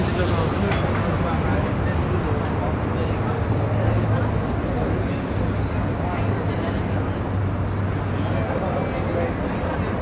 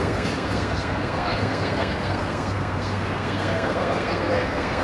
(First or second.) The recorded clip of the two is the first